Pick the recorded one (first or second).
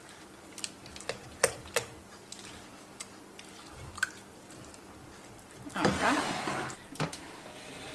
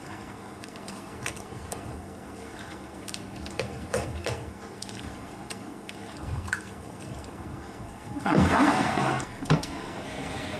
first